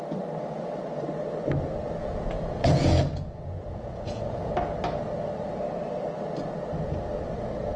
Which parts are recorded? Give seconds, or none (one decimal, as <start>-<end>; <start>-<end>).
0.0-2.0; 4.5-7.8